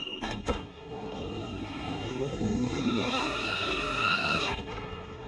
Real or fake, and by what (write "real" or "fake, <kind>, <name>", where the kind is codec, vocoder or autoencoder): fake, codec, SNAC